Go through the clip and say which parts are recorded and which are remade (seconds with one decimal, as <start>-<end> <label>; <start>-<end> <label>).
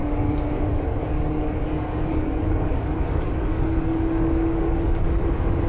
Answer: 0.0-5.7 remade